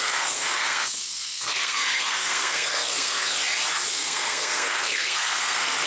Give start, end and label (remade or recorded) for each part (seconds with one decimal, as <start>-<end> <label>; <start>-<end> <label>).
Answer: 0.0-3.4 remade; 3.4-3.9 recorded; 3.9-5.9 remade